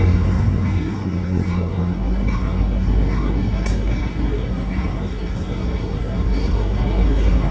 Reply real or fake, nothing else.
fake